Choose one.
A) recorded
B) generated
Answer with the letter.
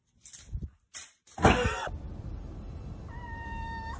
A